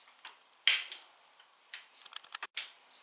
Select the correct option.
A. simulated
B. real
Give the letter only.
B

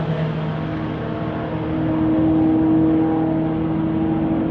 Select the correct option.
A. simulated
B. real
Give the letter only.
B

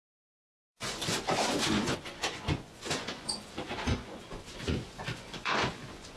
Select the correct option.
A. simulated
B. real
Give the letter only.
A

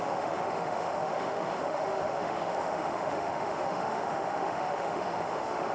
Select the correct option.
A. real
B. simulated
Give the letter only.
B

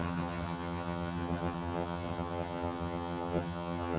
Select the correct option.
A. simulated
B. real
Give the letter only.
A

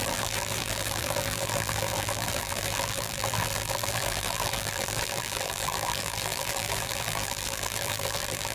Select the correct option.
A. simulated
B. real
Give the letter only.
A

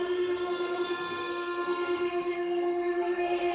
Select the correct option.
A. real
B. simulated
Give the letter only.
B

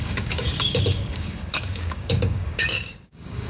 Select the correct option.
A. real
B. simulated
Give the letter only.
B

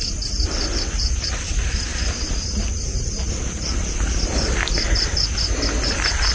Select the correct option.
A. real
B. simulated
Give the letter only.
A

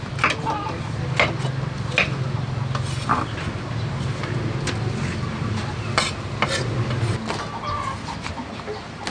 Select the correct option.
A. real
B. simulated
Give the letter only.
A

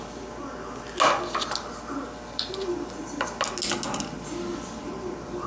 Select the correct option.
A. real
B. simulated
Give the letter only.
A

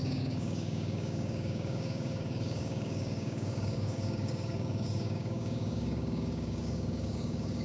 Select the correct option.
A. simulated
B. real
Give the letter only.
A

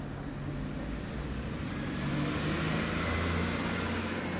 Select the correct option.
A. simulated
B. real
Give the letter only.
B